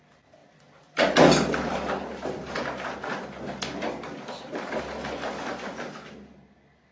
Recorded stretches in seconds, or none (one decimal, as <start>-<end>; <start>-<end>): 0.0-6.9